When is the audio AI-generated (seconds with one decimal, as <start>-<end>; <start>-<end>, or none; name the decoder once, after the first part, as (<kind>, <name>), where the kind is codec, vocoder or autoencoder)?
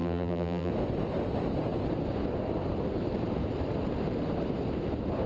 0.0-0.7 (vocoder, BigVGAN v2)